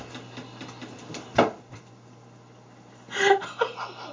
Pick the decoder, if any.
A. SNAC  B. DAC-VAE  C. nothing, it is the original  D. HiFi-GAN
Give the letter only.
C